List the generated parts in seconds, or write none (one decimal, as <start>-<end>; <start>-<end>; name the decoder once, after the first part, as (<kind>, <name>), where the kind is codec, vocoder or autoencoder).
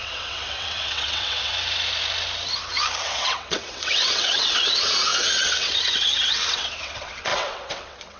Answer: 0.0-1.5 (vocoder, WaveNeXt); 3.0-8.2